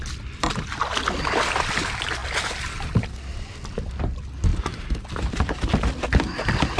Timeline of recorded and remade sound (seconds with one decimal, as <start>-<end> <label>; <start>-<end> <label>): 0.0-6.8 recorded